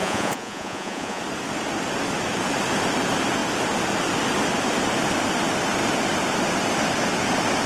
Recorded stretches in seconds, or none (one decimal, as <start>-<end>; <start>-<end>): 1.2-7.7